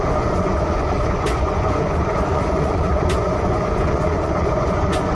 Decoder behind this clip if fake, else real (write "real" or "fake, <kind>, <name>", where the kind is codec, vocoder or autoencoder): fake, vocoder, Vocos